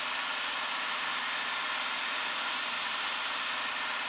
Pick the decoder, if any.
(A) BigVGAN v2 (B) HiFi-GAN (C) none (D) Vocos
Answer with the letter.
C